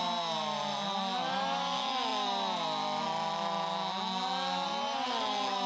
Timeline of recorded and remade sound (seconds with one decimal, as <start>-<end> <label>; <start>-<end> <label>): 0.0-5.7 recorded